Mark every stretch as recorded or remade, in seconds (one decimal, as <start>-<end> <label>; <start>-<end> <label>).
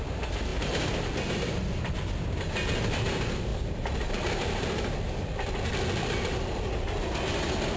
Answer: 0.0-7.8 recorded